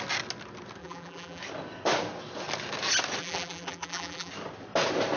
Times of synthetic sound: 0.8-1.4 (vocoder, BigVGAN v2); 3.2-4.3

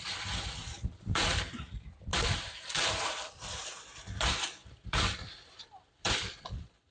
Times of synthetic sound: 0.6-1.4 (vocoder, BigVGAN v2); 2.1-4.0; 4.6-6.9

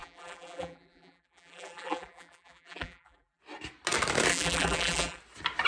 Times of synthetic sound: 0.0-3.4 (vocoder, BigVGAN v2); 4.3-5.2

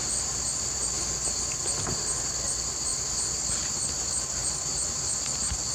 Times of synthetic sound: 0.0-0.8 (vocoder, BigVGAN v2); 4.4-5.7